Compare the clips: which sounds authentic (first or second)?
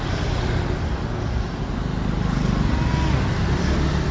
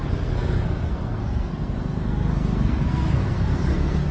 first